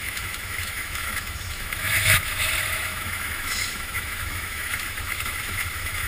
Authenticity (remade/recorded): remade